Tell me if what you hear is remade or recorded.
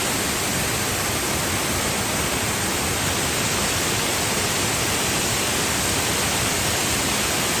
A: recorded